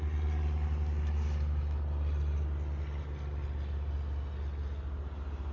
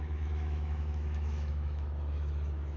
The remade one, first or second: second